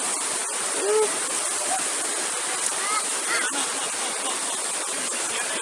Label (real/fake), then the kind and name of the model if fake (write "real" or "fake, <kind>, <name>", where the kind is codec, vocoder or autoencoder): real